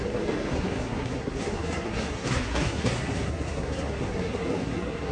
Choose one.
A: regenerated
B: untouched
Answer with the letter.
A